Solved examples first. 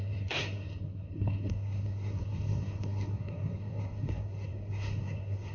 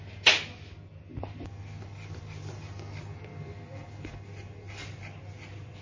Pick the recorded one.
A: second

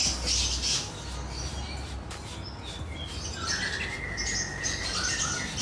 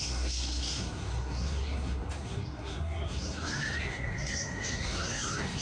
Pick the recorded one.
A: first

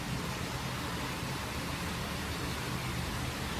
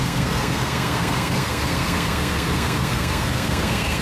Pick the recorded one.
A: first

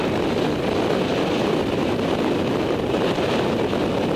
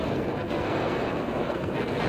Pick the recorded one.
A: first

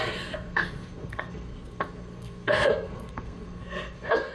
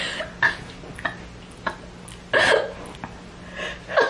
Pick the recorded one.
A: second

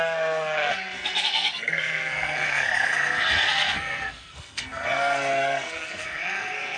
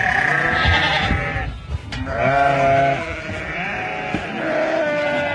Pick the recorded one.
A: second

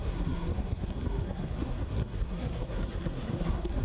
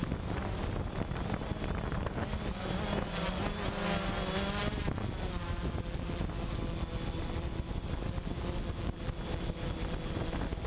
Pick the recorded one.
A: second